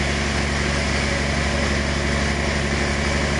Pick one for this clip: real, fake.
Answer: real